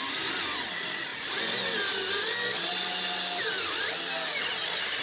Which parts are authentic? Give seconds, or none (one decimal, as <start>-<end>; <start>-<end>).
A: 0.0-5.0

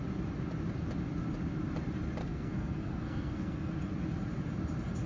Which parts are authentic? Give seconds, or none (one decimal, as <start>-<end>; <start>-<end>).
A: 0.0-2.2; 3.7-5.1

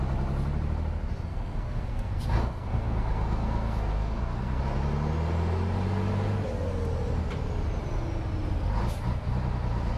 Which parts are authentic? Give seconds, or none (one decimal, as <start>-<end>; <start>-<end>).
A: 0.0-1.3; 4.6-10.0

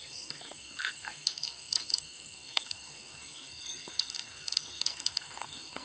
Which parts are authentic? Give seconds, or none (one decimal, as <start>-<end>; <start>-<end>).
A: none